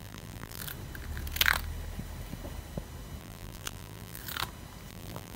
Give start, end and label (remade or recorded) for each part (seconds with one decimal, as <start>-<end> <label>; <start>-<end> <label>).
0.0-0.6 remade; 0.6-3.2 recorded; 3.2-4.2 remade; 4.2-4.9 recorded; 4.9-5.4 remade